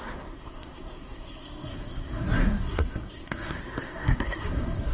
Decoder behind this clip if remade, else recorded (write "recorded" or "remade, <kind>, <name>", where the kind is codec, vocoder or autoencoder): remade, codec, SNAC